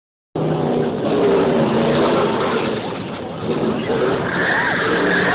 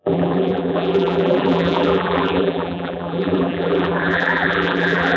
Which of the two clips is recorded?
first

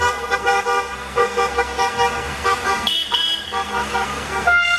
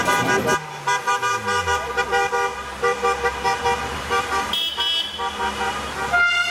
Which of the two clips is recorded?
second